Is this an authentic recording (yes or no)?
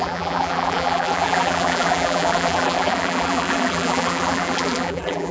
no